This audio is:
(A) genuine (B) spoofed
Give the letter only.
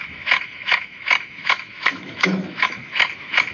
B